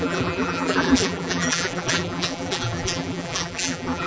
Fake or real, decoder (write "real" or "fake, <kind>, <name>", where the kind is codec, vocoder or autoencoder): fake, vocoder, BigVGAN v2